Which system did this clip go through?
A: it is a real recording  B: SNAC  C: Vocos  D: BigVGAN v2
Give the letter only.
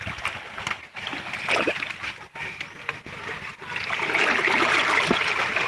A